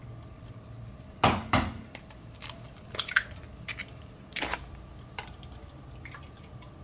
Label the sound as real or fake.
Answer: real